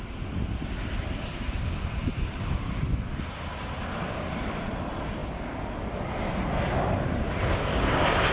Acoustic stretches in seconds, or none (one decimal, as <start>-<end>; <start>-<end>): 0.0-8.3